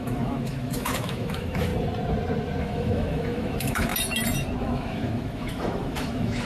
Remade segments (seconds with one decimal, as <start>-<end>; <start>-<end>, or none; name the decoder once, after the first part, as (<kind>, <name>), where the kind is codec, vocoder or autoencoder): 0.0-1.7 (autoencoder, DAC-VAE); 2.6-3.9; 4.6-6.5